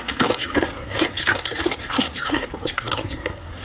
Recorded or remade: remade